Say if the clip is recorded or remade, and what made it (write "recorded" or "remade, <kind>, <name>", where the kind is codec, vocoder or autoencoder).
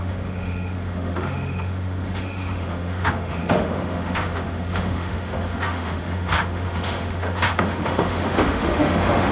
remade, autoencoder, DAC-VAE